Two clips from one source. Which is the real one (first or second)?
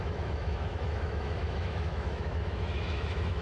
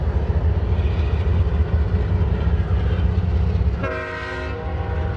second